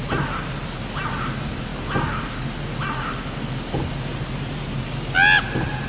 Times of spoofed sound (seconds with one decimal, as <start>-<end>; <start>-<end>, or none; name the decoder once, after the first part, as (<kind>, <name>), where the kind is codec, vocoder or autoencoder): none